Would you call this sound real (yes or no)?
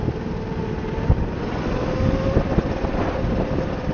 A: yes